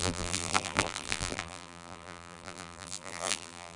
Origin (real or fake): fake